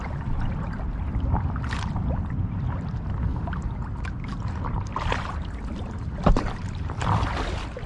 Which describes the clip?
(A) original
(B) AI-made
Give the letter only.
A